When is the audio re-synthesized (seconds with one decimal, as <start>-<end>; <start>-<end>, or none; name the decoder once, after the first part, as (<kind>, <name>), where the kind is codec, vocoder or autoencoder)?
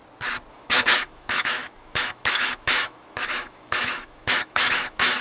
0.5-5.2 (autoencoder, DAC-VAE)